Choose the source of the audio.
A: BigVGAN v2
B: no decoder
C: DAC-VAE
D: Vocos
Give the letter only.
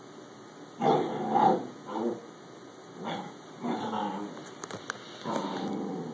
B